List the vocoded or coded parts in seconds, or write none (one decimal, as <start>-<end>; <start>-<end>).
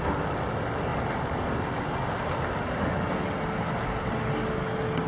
none